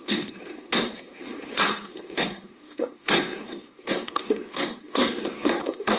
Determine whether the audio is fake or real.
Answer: fake